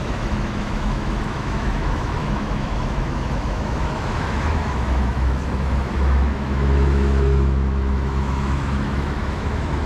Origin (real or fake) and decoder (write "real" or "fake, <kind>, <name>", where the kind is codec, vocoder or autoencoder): fake, autoencoder, DAC-VAE